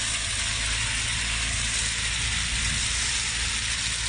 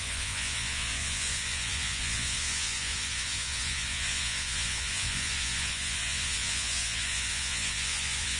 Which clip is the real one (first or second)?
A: first